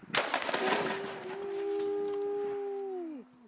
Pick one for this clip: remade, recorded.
recorded